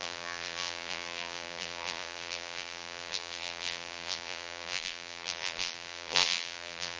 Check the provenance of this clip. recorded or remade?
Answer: remade